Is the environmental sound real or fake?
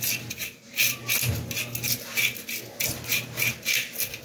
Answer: real